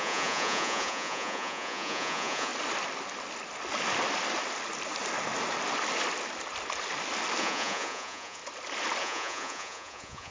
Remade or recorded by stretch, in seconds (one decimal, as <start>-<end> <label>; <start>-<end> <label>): 0.0-2.5 remade; 2.5-7.4 recorded; 7.4-8.4 remade; 8.4-9.0 recorded; 9.0-10.3 remade